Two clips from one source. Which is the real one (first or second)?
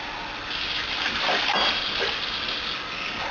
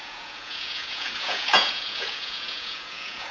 first